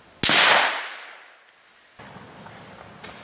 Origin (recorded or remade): recorded